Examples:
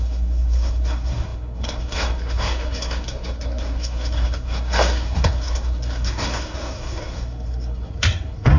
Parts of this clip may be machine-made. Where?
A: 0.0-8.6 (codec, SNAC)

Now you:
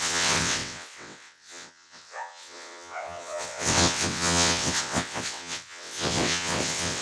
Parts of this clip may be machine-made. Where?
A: 0.0-7.0 (vocoder, WaveNeXt)

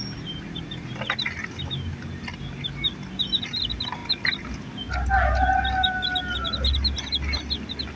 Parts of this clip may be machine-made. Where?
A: none

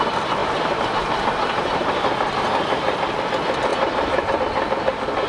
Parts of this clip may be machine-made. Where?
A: 0.4-3.2 (vocoder, BigVGAN v2); 3.7-4.4